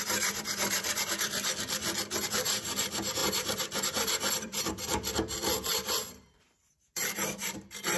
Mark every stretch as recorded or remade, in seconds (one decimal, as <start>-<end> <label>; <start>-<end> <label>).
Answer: 0.0-4.9 remade; 4.9-5.7 recorded; 5.7-8.0 remade